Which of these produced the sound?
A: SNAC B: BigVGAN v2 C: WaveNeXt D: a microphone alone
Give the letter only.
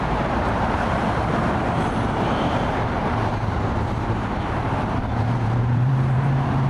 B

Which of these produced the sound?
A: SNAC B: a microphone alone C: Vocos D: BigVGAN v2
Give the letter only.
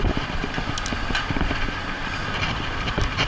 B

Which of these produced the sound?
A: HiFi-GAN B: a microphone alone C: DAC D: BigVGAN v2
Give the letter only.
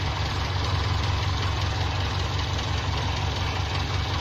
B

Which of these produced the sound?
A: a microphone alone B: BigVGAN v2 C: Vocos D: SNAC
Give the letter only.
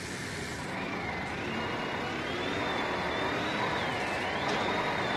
A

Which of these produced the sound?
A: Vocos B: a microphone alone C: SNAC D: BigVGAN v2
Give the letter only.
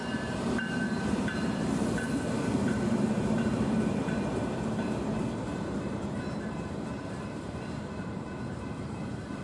D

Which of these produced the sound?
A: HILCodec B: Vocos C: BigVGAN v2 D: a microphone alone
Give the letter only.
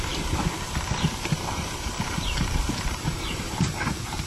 C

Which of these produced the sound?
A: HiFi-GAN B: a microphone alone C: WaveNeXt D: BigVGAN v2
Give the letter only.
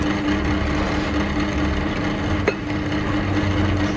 B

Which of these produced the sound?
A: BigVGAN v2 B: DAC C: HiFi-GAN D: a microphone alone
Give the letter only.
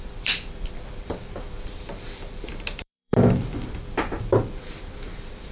A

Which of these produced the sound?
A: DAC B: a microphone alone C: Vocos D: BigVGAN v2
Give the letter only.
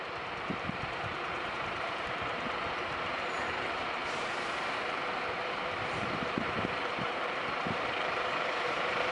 D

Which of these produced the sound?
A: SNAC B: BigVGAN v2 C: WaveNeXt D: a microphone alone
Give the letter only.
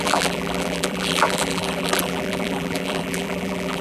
B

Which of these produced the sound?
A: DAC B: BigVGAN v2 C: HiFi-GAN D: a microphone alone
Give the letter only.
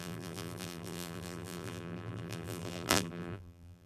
B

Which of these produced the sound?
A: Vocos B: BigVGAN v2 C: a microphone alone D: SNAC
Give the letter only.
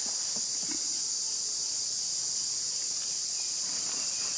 C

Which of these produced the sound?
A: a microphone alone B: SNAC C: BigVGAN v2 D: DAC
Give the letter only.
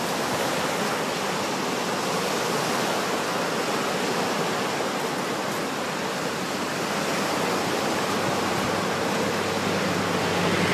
A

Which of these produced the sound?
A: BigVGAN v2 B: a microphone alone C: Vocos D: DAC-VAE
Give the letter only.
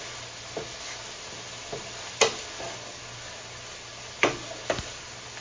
B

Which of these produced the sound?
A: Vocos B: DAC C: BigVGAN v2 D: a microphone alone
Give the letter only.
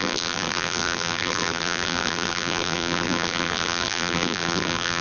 C